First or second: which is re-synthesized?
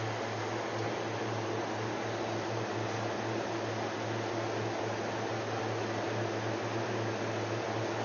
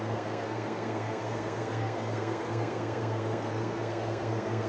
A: second